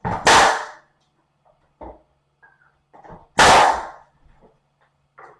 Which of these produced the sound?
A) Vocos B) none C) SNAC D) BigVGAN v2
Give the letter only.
B